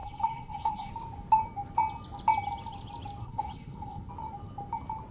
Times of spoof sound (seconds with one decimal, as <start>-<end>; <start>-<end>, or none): 0.0-0.9; 3.2-4.1